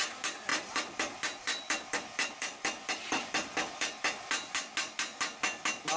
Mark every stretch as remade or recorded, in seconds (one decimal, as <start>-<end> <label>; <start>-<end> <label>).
0.0-0.5 recorded; 0.5-4.0 remade; 4.0-6.0 recorded